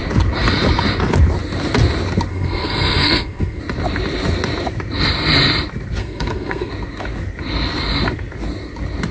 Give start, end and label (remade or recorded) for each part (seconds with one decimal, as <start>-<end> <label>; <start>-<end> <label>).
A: 0.0-2.3 recorded; 2.3-3.6 remade; 3.6-6.0 recorded; 6.0-6.7 remade; 6.7-9.1 recorded